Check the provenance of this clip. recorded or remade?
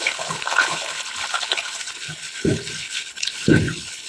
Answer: remade